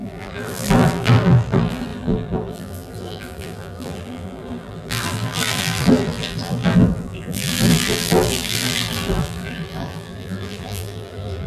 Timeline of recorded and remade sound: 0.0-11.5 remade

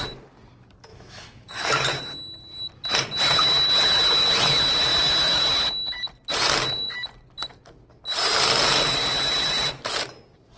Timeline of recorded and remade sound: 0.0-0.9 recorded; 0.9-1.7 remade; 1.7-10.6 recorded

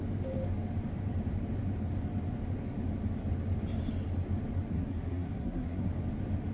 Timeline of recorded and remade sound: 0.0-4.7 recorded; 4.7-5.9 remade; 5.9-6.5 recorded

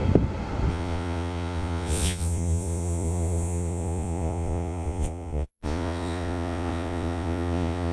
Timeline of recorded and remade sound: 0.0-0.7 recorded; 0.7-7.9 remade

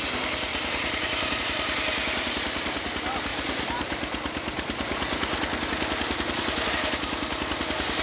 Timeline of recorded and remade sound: 0.0-0.5 recorded; 0.5-1.4 remade; 1.4-3.3 recorded; 3.3-6.7 remade; 6.7-8.0 recorded